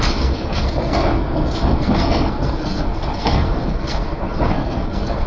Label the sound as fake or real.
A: fake